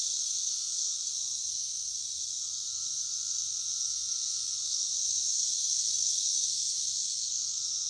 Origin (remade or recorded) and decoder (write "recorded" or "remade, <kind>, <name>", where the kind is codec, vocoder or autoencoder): remade, codec, SNAC